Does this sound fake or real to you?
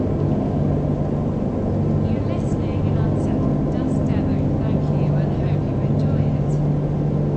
real